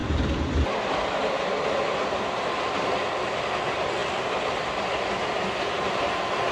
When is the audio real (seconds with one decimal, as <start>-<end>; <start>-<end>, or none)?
1.2-6.5